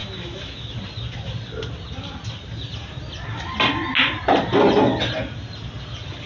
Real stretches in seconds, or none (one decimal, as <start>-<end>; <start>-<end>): 0.7-6.3